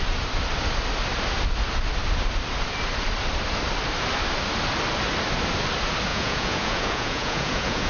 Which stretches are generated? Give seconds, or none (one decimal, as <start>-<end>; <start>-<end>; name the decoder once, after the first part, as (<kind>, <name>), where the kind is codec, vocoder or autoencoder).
6.1-7.9 (vocoder, Vocos)